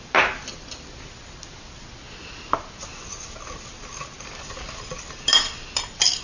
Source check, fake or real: real